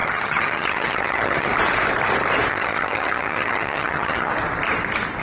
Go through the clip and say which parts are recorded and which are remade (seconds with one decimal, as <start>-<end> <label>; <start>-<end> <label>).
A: 0.0-1.5 remade; 1.5-2.5 recorded; 2.5-4.3 remade; 4.3-5.2 recorded